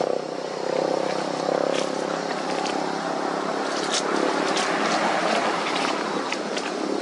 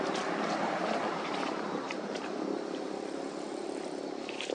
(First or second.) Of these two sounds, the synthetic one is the second